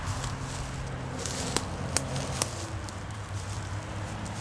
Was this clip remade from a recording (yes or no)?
no